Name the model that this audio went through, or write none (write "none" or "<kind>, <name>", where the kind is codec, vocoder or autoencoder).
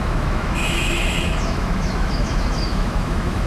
autoencoder, DAC-VAE